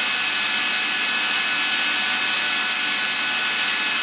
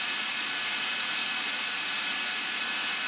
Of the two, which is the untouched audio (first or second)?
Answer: first